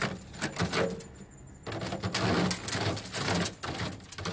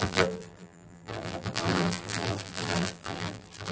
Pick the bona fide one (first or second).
first